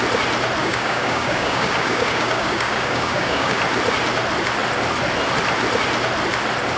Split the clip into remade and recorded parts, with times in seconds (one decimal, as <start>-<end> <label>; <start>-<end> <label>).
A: 0.0-0.6 recorded; 0.6-3.6 remade; 3.6-6.8 recorded